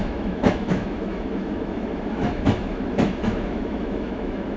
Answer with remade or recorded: remade